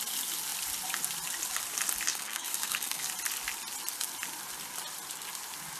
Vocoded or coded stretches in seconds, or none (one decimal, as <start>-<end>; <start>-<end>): 2.1-3.0